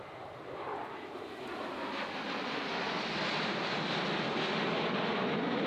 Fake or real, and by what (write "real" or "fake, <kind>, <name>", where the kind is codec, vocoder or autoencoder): real